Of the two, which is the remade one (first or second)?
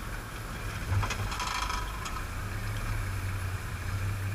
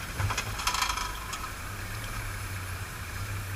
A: second